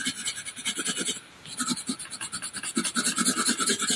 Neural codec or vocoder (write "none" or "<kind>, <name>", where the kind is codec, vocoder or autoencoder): none